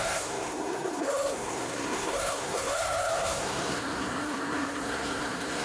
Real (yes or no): no